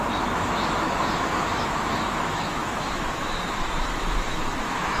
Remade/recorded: remade